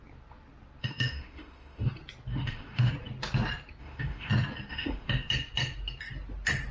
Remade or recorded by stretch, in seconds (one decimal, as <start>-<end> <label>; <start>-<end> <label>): 0.0-0.8 recorded; 0.8-1.9 remade; 1.9-2.3 recorded; 2.3-2.9 remade; 2.9-3.8 recorded; 3.8-4.3 remade; 4.3-4.7 recorded; 4.7-5.3 remade; 5.3-6.7 recorded